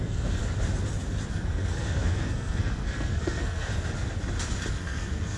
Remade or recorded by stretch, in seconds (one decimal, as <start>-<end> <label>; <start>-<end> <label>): 0.0-0.4 remade; 0.4-1.3 recorded; 1.3-3.7 remade; 3.7-4.7 recorded; 4.7-5.4 remade